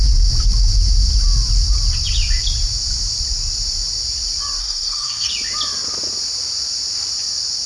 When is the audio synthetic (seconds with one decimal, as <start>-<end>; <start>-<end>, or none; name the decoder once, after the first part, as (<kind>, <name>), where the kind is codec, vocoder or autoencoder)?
4.6-5.3 (codec, SNAC)